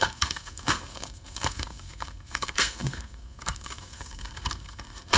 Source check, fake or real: fake